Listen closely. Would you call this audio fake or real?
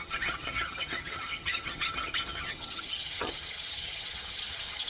fake